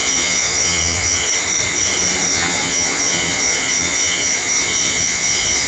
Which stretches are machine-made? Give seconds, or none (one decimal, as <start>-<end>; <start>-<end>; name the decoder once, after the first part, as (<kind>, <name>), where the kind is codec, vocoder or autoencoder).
0.0-1.3 (vocoder, Vocos); 2.3-5.7